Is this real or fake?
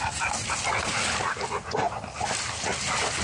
real